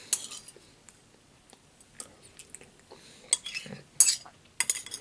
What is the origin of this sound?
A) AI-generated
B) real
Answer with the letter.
B